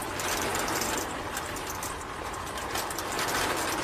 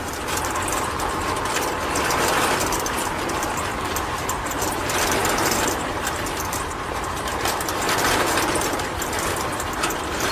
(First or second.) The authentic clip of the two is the first